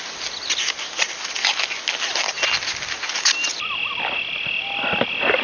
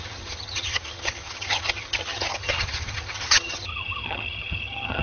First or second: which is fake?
second